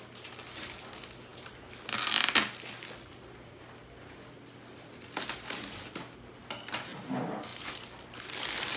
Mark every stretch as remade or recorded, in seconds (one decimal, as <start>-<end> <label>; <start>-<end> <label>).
0.0-8.8 recorded